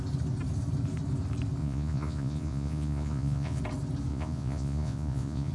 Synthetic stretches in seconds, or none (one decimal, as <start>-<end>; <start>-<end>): 1.6-3.6; 4.1-5.5